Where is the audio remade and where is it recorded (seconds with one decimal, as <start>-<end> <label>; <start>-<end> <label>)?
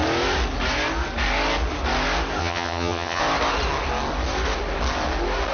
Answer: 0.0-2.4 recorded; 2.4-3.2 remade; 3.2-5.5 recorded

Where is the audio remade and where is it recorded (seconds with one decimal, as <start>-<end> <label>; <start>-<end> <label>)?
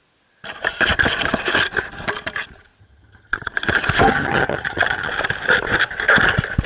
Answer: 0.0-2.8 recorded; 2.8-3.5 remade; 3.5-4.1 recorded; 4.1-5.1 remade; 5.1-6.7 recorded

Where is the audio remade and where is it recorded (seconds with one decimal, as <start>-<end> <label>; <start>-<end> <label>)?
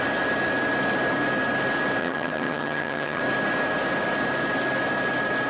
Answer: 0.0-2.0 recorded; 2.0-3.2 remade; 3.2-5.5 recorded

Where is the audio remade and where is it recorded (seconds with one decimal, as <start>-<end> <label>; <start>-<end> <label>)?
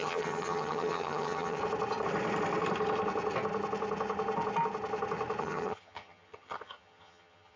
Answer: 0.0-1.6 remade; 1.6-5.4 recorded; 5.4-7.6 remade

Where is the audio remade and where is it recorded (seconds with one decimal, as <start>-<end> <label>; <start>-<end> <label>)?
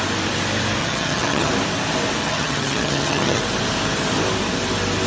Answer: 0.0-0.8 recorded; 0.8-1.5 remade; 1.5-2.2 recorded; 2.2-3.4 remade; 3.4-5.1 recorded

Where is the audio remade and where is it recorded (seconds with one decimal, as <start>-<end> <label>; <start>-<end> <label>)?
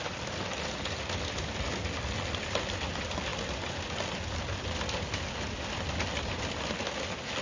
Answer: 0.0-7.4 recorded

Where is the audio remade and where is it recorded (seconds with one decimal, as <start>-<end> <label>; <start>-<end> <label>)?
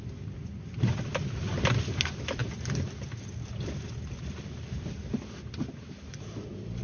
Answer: 0.0-6.8 recorded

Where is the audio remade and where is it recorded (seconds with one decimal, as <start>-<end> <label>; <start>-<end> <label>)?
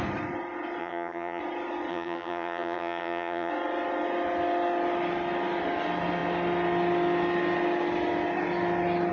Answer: 0.0-0.8 recorded; 0.8-1.4 remade; 1.4-1.9 recorded; 1.9-3.5 remade; 3.5-9.1 recorded